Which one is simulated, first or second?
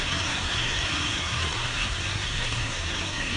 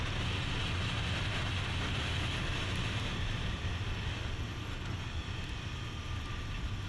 first